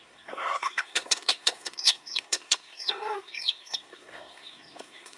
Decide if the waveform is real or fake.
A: fake